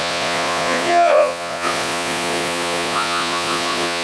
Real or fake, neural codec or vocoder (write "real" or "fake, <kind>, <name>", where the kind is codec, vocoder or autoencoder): fake, vocoder, Vocos